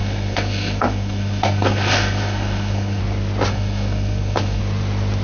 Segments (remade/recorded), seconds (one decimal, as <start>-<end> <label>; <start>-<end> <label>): 0.0-3.0 remade; 3.0-3.5 recorded; 3.5-4.6 remade; 4.6-5.2 recorded